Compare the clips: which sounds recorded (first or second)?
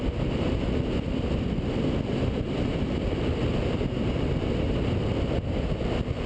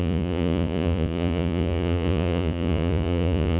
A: first